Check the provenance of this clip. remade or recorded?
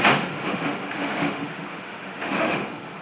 remade